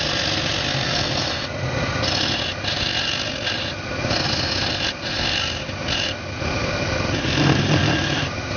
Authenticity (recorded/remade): recorded